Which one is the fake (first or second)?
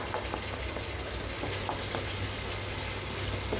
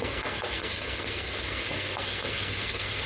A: second